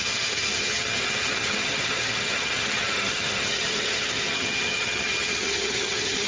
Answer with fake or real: fake